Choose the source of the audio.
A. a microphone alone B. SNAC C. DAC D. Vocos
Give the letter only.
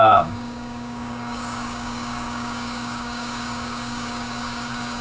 C